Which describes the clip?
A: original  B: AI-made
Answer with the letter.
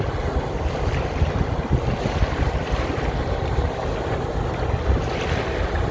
A